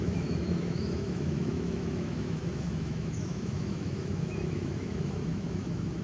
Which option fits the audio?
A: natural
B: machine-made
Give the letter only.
B